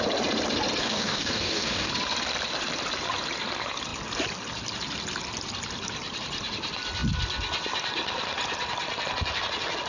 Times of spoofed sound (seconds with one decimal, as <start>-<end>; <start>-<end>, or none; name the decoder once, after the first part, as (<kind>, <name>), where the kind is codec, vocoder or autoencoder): 0.8-1.9 (codec, DAC)